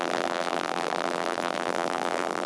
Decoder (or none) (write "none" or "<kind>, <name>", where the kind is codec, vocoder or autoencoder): vocoder, BigVGAN v2